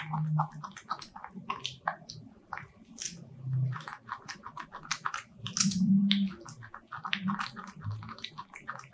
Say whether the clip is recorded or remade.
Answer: recorded